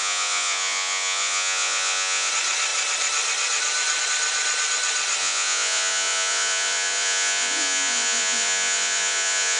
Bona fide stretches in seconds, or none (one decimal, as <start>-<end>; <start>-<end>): 2.3-5.2